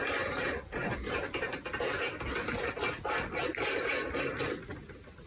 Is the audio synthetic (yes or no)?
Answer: no